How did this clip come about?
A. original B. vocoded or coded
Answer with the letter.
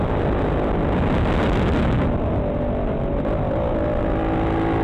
A